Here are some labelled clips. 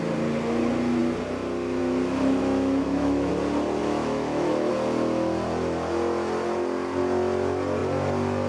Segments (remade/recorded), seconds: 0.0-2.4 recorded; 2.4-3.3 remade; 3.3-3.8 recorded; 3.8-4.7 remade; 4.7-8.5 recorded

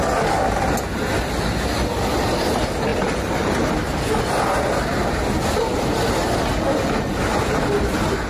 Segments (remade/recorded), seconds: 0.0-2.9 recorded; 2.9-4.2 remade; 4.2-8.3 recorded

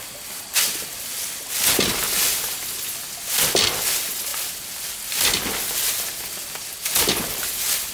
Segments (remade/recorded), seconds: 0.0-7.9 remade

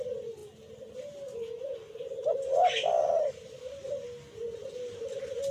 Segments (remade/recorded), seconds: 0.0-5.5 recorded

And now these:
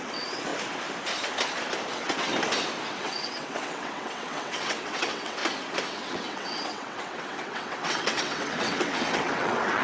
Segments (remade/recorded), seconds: 0.0-0.5 remade; 0.5-1.9 recorded; 1.9-2.3 remade; 2.3-2.9 recorded; 2.9-5.4 remade; 5.4-5.9 recorded; 5.9-9.8 remade